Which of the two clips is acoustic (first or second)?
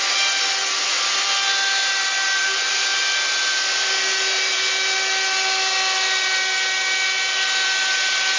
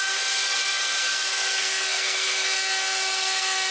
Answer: first